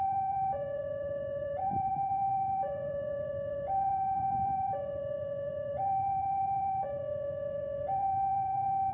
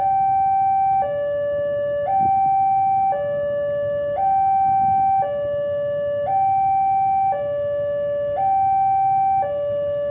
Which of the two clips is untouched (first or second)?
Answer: second